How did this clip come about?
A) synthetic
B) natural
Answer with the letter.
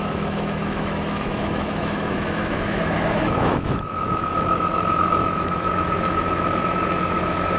A